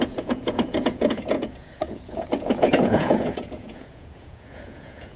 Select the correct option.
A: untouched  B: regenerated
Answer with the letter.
B